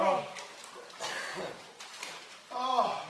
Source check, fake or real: real